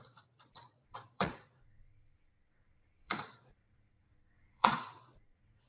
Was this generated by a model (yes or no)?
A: yes